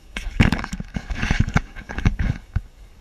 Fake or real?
fake